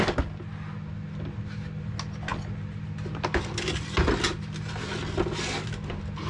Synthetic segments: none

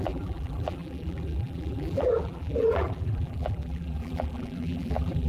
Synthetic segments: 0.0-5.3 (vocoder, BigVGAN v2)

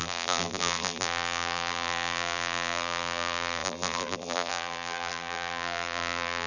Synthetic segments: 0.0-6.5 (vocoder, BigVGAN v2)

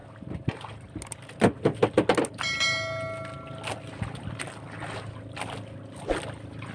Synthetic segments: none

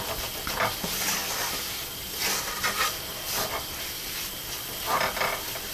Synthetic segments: none

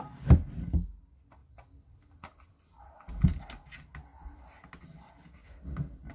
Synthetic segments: 1.4-3.4 (vocoder, BigVGAN v2)